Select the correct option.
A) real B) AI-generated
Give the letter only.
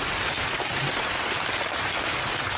A